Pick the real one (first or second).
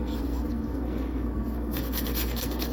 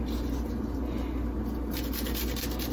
second